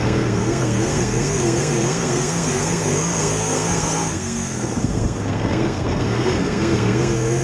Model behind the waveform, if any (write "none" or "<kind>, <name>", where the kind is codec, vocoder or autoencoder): codec, SNAC